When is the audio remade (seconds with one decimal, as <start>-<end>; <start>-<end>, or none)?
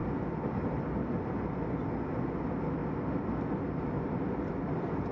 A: none